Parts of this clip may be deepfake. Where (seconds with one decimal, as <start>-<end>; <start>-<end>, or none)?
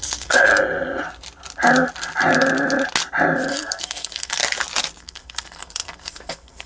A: 0.0-0.5; 3.5-4.4; 5.0-6.7